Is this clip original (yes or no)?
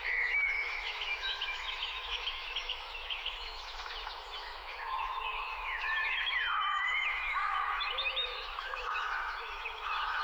no